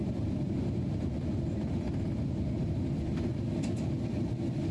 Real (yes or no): yes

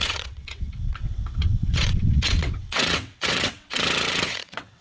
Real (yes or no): no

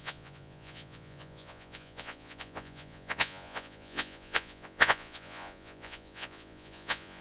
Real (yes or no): no